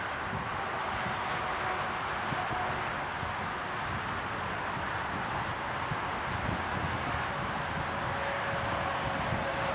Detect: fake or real real